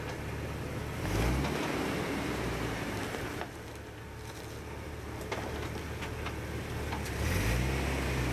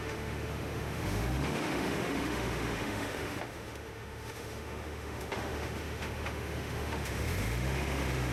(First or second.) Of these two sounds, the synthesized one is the second